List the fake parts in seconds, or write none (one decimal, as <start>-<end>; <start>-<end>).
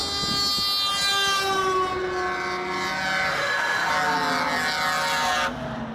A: 3.3-3.9